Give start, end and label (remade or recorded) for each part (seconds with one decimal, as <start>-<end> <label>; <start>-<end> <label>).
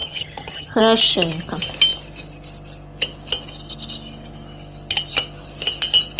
0.0-0.8 remade; 0.8-6.2 recorded